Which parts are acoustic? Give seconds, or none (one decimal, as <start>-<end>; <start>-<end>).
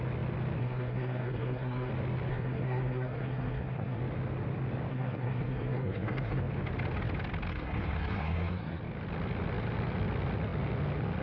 0.0-0.6; 1.9-2.3; 4.0-4.9; 6.4-7.5; 8.8-11.2